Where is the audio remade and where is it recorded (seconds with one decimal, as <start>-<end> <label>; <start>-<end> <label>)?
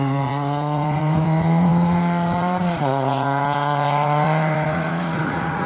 0.0-5.7 remade